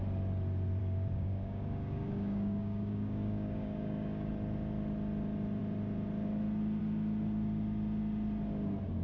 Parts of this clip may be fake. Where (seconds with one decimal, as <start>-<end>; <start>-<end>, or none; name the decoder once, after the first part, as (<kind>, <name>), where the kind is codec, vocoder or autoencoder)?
0.8-4.3 (codec, DAC)